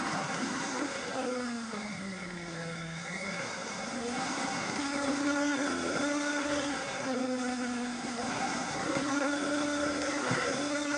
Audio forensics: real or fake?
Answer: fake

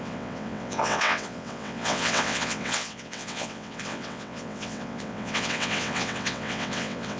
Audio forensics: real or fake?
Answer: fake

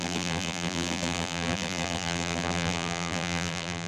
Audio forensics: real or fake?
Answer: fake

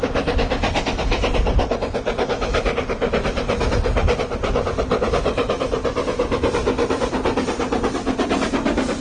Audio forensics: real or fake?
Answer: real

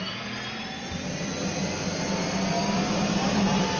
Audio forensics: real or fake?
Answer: real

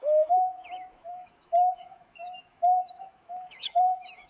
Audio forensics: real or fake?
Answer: fake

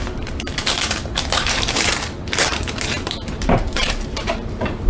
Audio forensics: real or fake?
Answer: fake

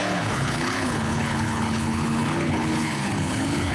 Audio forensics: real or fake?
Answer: fake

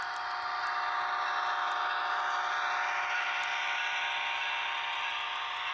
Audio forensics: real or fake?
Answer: real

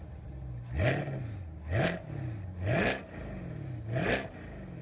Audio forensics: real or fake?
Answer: real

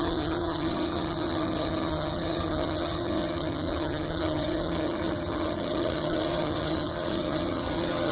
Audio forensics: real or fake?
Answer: fake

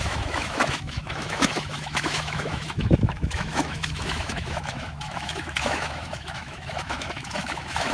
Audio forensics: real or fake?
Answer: fake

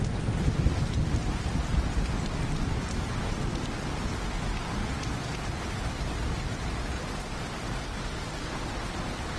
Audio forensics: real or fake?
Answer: real